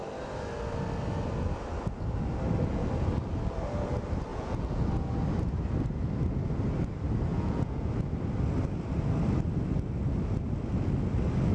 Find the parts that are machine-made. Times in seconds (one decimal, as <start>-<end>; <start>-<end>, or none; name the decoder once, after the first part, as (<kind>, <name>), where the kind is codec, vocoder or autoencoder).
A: 4.3-4.9 (vocoder, Vocos); 7.3-7.8

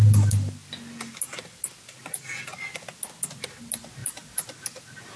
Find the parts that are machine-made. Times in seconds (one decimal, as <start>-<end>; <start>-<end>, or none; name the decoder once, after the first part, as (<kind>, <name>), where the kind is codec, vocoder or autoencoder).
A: none

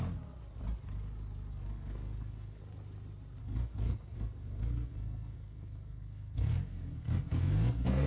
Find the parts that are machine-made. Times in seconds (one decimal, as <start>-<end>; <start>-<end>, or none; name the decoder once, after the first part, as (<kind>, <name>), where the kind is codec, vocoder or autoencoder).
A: 1.5-2.6 (codec, SNAC); 3.4-8.1

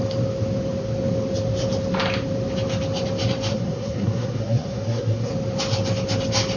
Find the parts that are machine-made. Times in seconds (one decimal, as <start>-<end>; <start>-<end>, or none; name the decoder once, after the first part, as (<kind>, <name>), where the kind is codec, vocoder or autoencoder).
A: 3.5-5.3 (codec, SNAC)